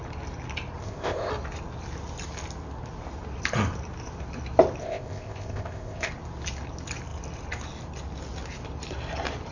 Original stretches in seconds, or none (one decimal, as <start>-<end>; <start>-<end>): 0.0-0.8; 1.3-4.8; 6.1-9.5